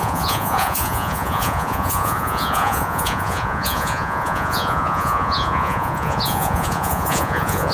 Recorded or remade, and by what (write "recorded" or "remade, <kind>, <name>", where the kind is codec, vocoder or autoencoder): remade, vocoder, Vocos